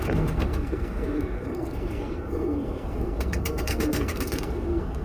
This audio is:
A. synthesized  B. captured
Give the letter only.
A